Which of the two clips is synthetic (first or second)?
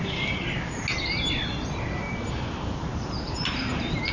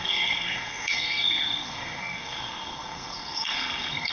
second